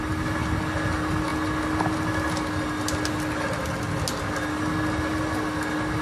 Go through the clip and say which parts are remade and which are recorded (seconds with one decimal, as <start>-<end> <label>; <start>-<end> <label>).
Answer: 0.0-6.0 recorded